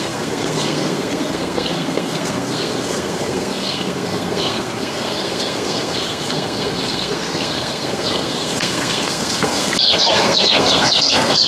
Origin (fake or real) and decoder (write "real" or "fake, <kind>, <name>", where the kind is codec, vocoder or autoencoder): fake, codec, SNAC